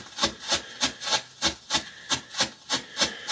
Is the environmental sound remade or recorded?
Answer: recorded